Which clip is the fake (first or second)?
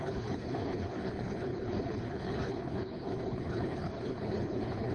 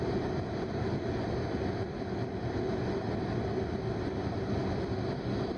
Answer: first